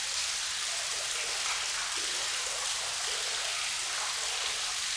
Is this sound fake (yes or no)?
no